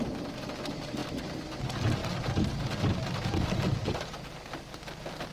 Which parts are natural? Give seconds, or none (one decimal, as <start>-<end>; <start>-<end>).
0.0-5.3